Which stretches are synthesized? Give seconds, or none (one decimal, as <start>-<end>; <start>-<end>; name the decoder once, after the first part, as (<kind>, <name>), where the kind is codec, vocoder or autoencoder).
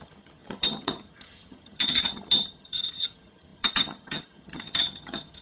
0.0-5.4 (vocoder, HiFi-GAN)